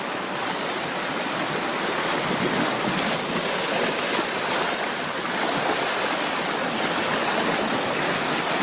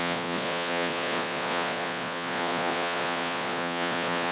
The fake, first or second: second